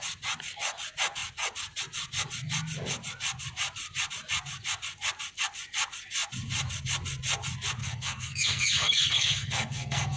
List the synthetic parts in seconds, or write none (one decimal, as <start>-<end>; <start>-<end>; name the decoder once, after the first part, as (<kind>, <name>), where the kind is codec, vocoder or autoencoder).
7.8-10.2 (codec, SNAC)